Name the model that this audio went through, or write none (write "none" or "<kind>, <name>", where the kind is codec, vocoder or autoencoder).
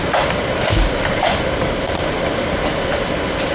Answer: none